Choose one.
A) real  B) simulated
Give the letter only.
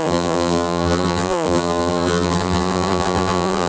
B